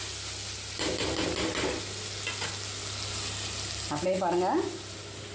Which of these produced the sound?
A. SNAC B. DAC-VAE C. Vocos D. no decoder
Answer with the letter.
D